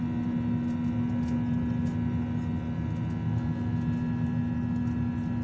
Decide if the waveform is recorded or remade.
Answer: recorded